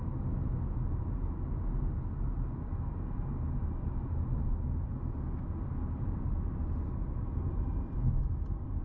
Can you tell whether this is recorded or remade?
recorded